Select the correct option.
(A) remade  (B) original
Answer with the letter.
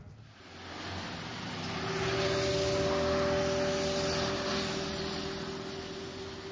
B